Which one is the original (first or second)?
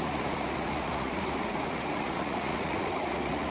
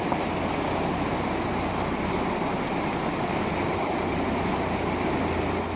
second